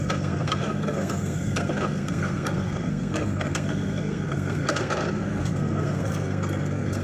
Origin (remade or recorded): remade